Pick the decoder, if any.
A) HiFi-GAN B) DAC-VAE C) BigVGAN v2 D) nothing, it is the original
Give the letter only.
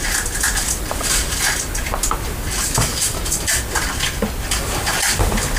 D